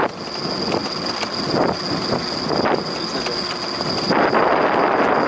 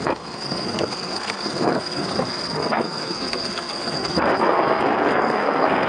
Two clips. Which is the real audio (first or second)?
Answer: first